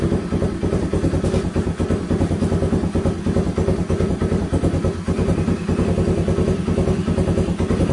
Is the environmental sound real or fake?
real